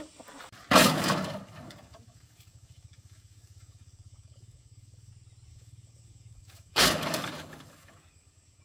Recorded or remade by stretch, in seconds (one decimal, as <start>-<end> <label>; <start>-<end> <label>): 0.0-0.8 recorded; 0.8-5.1 remade; 5.1-5.5 recorded; 5.5-8.6 remade